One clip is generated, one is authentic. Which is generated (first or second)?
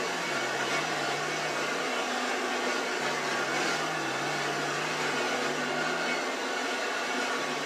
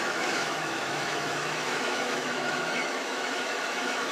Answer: second